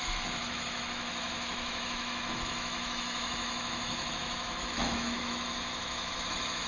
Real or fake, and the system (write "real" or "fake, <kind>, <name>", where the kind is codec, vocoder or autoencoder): fake, autoencoder, DAC-VAE